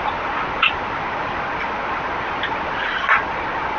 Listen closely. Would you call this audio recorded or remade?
recorded